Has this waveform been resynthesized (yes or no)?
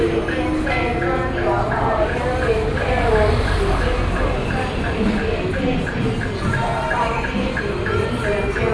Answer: no